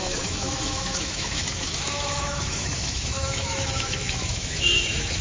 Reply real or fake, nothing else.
fake